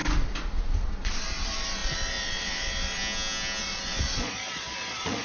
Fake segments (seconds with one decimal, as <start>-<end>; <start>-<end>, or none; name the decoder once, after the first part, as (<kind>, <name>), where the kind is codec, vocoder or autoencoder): 0.8-3.0 (vocoder, Vocos); 3.6-5.2